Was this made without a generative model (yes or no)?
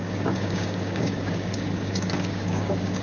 no